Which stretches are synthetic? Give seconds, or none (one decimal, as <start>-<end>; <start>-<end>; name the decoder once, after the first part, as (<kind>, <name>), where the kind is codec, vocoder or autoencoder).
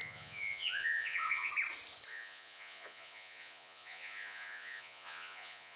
0.0-1.5 (vocoder, Vocos); 2.1-5.8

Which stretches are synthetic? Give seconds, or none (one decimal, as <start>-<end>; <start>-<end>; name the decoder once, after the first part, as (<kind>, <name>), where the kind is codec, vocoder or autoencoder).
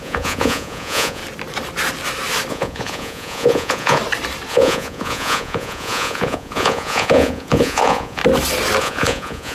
0.0-1.2 (vocoder, Vocos); 2.5-4.0; 4.5-8.2; 8.8-9.5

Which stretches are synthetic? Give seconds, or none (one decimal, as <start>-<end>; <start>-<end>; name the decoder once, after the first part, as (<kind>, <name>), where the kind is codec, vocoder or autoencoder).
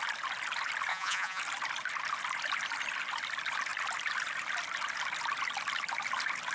0.9-1.4 (vocoder, Vocos)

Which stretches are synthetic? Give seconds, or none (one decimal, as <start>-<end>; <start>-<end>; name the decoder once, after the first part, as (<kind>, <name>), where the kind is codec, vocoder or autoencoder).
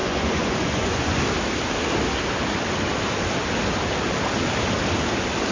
0.0-1.2 (vocoder, Vocos)